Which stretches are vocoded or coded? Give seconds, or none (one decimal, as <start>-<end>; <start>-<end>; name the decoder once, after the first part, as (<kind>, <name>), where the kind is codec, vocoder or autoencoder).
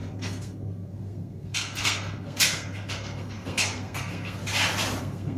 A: 0.0-4.4 (codec, SNAC); 5.0-5.4